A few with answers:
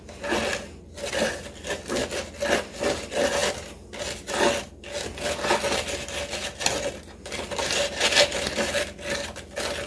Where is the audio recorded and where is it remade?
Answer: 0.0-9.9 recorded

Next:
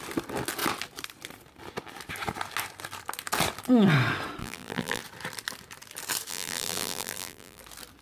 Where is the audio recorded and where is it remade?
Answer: 0.0-4.4 recorded; 4.4-5.0 remade; 5.0-6.3 recorded; 6.3-7.6 remade; 7.6-8.0 recorded

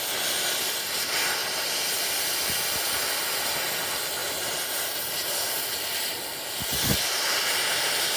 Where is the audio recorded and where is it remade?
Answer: 0.0-8.2 recorded